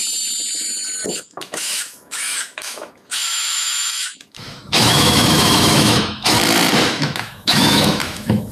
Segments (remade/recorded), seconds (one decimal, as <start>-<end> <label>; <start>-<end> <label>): 0.0-1.1 recorded; 1.1-6.4 remade; 6.4-6.9 recorded; 6.9-8.5 remade